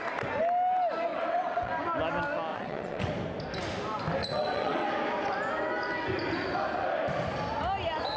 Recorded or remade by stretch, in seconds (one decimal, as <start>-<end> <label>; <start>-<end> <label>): 0.0-1.1 recorded; 1.1-1.7 remade; 1.7-2.5 recorded; 2.5-3.1 remade; 3.1-4.2 recorded; 4.2-4.9 remade; 4.9-8.2 recorded

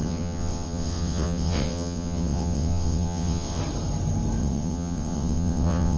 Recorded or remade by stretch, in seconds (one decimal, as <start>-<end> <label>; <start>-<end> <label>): 0.0-3.6 remade; 3.6-4.4 recorded; 4.4-6.0 remade

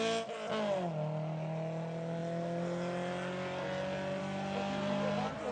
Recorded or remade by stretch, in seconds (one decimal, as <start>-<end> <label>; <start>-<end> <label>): 0.0-5.5 recorded

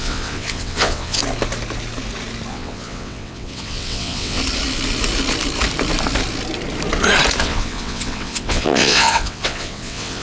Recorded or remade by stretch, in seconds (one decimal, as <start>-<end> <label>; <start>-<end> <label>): 0.0-1.2 remade; 1.2-2.5 recorded; 2.5-4.4 remade; 4.4-7.4 recorded; 7.4-10.2 remade

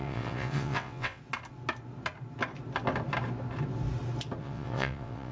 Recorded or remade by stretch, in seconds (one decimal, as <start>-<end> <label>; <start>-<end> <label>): 0.0-1.2 remade; 1.2-4.4 recorded; 4.4-5.3 remade

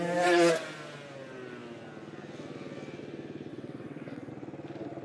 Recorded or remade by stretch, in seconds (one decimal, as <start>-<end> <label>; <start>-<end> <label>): 0.0-3.5 recorded; 3.5-4.3 remade; 4.3-5.0 recorded

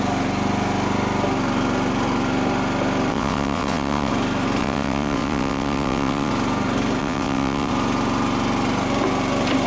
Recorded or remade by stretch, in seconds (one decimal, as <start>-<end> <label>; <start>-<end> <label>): 0.0-3.1 recorded; 3.1-4.1 remade; 4.1-4.6 recorded; 4.6-6.3 remade; 6.3-7.0 recorded; 7.0-7.7 remade; 7.7-9.7 recorded

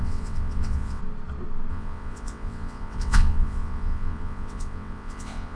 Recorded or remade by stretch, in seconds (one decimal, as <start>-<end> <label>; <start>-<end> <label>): 0.0-1.0 remade; 1.0-1.7 recorded; 1.7-5.6 remade